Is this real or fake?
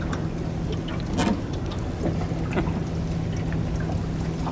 real